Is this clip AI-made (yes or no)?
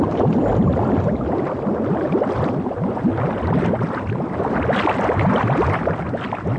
no